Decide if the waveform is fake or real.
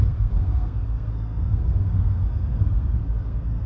fake